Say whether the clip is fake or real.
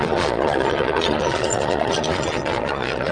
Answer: fake